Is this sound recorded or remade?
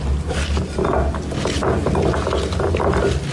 recorded